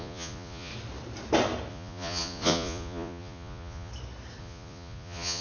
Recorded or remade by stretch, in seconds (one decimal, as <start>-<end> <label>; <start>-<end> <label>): 0.0-0.7 remade; 0.7-1.7 recorded; 1.7-3.9 remade; 3.9-4.4 recorded; 4.4-5.4 remade